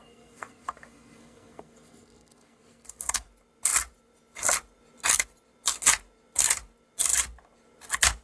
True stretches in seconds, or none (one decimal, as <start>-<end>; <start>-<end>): 3.3-8.2